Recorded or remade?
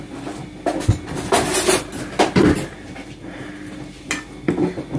recorded